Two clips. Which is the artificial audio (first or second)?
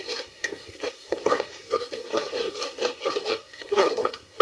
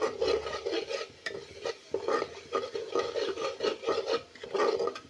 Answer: first